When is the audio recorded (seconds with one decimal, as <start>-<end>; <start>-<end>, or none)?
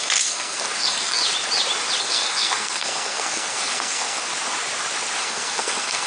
1.2-2.0; 4.3-5.2